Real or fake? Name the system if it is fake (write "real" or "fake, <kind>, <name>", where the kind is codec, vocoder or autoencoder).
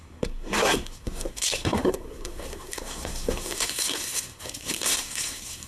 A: fake, codec, SNAC